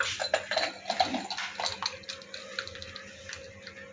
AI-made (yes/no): no